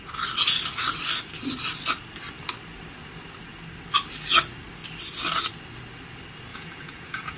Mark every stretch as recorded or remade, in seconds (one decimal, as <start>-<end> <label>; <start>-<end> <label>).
0.0-6.5 recorded; 6.5-7.4 remade